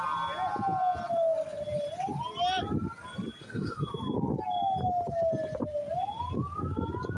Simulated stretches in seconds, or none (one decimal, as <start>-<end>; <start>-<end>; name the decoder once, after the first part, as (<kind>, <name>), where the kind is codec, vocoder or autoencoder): 3.4-3.9 (autoencoder, DAC-VAE)

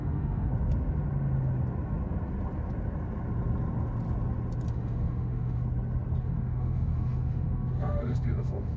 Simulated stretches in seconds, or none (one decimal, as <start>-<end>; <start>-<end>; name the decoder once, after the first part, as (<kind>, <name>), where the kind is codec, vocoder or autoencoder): 0.0-0.5 (autoencoder, DAC-VAE); 4.7-5.6; 6.2-8.8

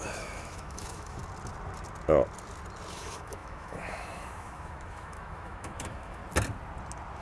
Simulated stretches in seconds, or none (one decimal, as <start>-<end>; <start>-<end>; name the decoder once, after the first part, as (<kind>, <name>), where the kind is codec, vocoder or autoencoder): 0.0-1.2 (autoencoder, DAC-VAE); 2.9-6.2

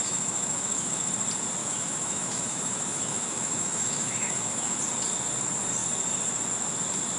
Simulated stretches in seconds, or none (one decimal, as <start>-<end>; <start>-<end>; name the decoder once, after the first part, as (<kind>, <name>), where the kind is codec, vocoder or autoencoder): 0.0-1.1 (autoencoder, DAC-VAE); 1.6-4.8

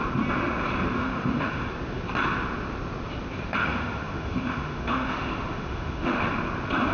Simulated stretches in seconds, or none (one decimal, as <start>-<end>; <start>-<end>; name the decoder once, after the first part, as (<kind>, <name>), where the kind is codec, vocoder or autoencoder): 1.0-1.7 (autoencoder, DAC-VAE); 3.6-6.2